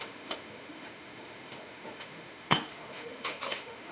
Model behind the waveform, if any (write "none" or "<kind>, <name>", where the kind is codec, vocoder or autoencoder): autoencoder, DAC-VAE